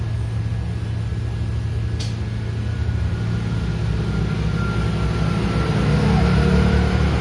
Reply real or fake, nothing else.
real